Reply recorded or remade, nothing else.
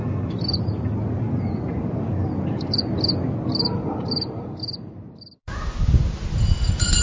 recorded